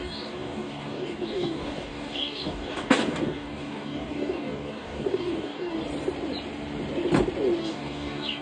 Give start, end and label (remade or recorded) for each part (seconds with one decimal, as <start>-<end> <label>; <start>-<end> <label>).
0.0-5.8 remade; 5.8-7.6 recorded; 7.6-8.4 remade